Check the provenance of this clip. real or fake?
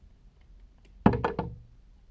real